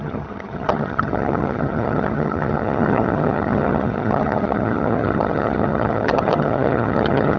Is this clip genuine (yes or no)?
no